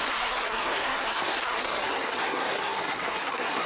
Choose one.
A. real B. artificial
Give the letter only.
B